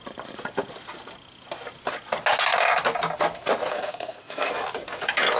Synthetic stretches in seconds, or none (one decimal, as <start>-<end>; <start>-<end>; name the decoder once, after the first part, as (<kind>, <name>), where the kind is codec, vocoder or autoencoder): 3.7-4.5 (codec, SNAC)